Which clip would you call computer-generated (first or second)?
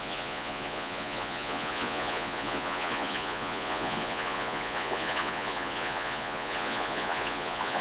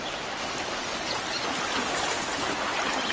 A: first